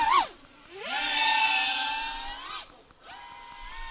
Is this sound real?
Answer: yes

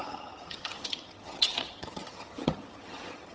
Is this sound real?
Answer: no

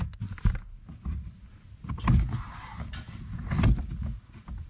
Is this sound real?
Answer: yes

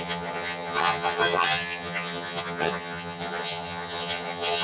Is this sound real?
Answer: no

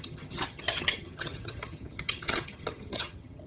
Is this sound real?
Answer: no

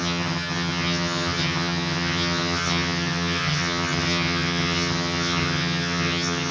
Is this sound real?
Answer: no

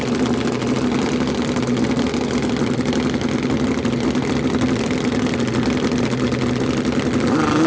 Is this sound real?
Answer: yes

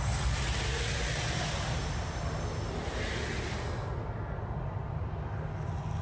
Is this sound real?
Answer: yes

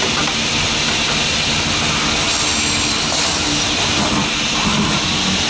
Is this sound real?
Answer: yes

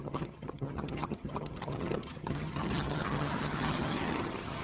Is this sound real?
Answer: no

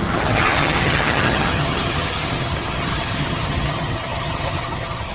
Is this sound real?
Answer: no